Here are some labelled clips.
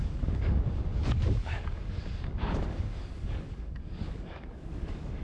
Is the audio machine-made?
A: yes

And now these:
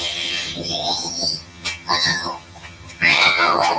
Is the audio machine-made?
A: yes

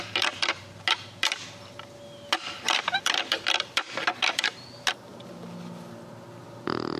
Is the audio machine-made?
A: no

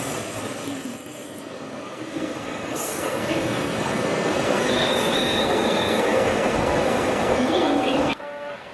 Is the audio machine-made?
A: yes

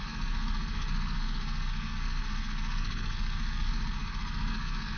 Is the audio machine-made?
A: yes